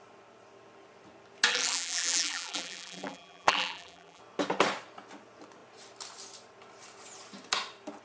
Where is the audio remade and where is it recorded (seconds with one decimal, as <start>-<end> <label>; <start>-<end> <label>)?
0.0-1.5 recorded; 1.5-4.2 remade; 4.2-8.0 recorded

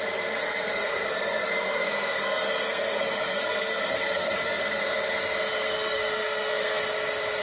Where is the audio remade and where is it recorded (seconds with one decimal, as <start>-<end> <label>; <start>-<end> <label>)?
0.0-0.4 recorded; 0.4-4.8 remade; 4.8-5.6 recorded; 5.6-6.8 remade; 6.8-7.4 recorded